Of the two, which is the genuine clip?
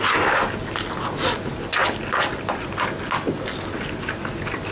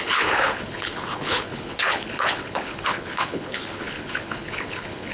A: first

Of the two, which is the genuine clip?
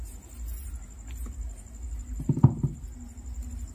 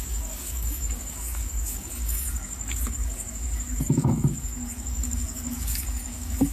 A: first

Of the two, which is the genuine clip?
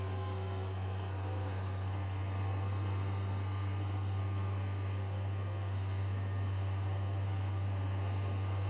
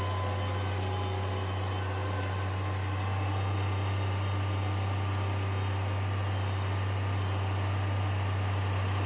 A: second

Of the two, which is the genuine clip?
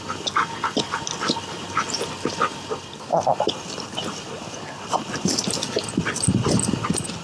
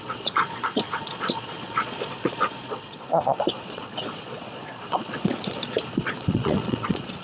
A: first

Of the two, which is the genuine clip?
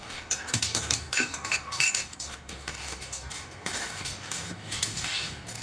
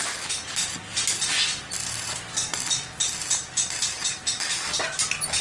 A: second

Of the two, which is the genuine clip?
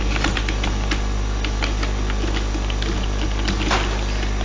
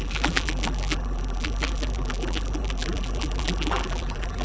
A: first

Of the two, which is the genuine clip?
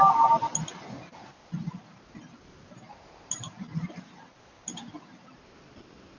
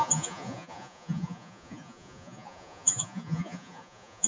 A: first